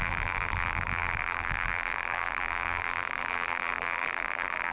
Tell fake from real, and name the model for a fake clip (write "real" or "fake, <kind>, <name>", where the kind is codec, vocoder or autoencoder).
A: fake, vocoder, BigVGAN v2